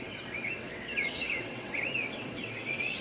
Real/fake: fake